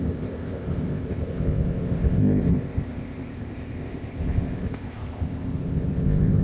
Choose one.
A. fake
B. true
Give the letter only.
A